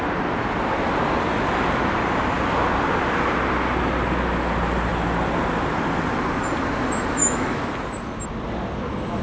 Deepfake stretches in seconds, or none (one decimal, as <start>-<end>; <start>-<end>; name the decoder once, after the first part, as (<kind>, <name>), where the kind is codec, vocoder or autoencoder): 7.2-7.7 (autoencoder, DAC-VAE)